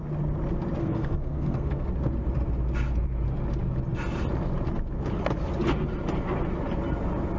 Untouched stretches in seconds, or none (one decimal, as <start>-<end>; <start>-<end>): 0.0-0.8; 1.9-7.4